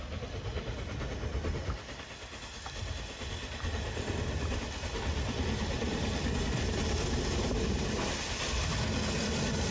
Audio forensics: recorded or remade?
recorded